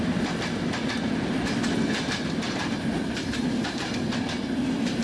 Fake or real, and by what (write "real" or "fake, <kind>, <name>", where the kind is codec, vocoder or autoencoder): real